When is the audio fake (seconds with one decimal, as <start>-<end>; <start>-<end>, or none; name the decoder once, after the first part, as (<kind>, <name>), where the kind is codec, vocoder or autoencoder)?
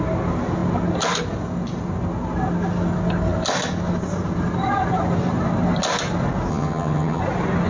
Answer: 6.5-7.2 (vocoder, HiFi-GAN)